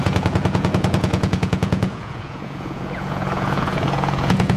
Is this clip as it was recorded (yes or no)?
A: no